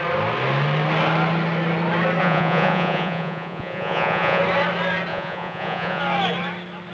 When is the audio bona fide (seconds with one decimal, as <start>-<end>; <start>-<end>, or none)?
0.0-2.2; 4.4-5.1; 6.0-6.9

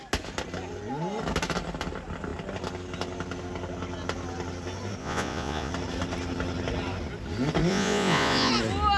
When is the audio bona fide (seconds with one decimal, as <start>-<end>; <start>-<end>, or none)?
0.0-5.0; 5.7-7.7; 8.5-9.0

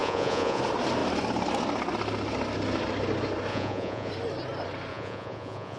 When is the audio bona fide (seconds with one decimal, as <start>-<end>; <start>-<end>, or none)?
0.6-3.5; 4.1-4.9

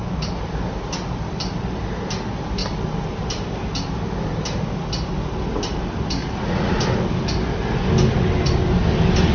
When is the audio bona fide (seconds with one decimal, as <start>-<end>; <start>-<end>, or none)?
0.0-6.2; 6.8-9.3

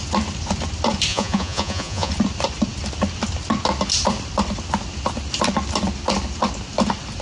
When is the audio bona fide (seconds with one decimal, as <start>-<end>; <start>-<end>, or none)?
0.0-1.1; 2.1-7.2

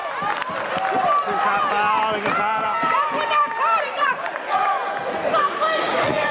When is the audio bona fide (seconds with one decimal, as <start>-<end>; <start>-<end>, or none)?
0.0-3.8; 4.8-5.8

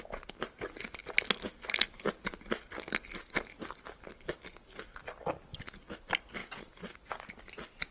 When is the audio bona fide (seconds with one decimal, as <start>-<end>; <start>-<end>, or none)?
0.0-6.4; 7.4-7.9